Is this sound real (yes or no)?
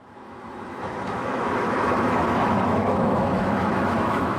no